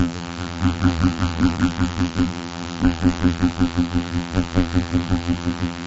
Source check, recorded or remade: remade